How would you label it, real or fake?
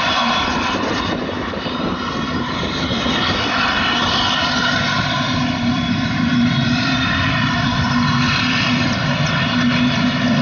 fake